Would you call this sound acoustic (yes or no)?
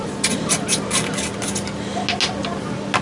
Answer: yes